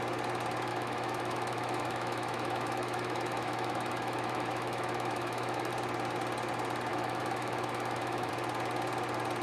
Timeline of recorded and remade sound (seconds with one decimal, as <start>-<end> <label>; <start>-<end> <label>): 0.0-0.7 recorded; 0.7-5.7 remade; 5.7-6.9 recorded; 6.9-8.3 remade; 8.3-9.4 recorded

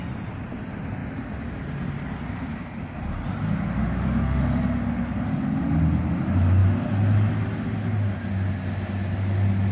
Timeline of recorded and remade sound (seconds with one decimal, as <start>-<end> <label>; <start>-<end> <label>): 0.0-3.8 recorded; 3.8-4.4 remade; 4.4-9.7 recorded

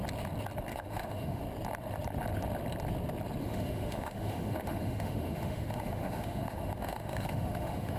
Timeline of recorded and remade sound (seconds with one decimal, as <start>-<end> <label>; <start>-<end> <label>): 0.0-0.7 recorded; 0.7-1.4 remade; 1.4-3.4 recorded; 3.4-8.0 remade

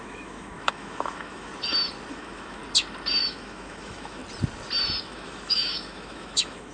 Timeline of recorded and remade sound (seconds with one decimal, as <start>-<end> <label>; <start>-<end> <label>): 0.0-1.5 remade; 1.5-2.1 recorded; 2.1-2.6 remade; 2.6-3.2 recorded; 3.2-4.2 remade; 4.2-5.0 recorded; 5.0-6.7 remade

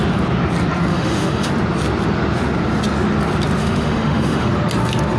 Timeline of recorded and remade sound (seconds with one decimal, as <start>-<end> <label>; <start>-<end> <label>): 0.0-0.9 recorded; 0.9-1.5 remade; 1.5-3.6 recorded; 3.6-4.5 remade; 4.5-5.2 recorded

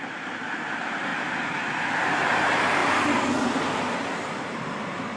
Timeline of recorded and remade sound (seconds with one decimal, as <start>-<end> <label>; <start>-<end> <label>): 0.0-5.2 recorded